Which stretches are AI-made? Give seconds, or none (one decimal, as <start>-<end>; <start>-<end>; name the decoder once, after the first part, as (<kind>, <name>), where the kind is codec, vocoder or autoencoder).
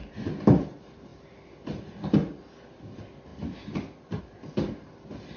none